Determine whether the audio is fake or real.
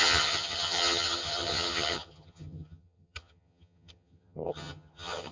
fake